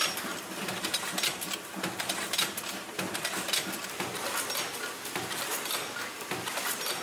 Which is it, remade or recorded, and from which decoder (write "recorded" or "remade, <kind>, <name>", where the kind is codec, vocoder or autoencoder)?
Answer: remade, vocoder, BigVGAN v2